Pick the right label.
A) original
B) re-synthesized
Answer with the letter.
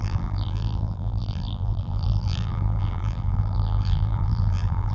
B